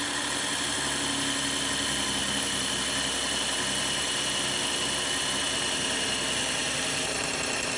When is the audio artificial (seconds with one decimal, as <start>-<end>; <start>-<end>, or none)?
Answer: 2.2-2.8; 6.6-7.2